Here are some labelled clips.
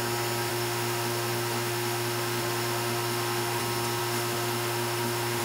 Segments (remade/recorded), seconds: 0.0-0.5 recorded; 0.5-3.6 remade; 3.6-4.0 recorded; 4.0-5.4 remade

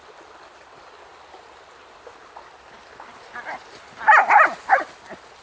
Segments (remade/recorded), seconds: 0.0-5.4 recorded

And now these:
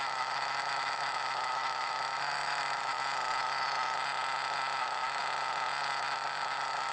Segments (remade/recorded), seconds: 0.0-3.0 remade; 3.0-4.8 recorded; 4.8-5.2 remade; 5.2-6.0 recorded; 6.0-6.9 remade

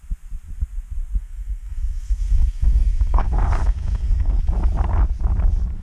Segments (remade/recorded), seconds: 0.0-1.2 recorded; 1.2-4.4 remade; 4.4-5.8 recorded